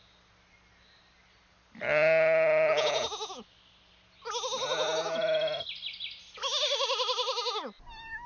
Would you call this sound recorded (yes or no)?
yes